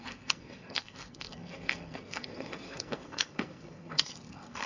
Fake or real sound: fake